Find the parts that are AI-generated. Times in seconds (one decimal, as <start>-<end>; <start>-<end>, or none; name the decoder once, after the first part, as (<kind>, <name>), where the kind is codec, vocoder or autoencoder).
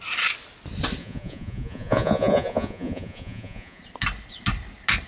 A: 1.0-3.8 (vocoder, Vocos)